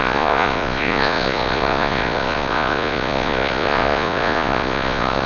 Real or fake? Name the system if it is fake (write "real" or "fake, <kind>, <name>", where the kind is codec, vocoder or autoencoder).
fake, vocoder, Vocos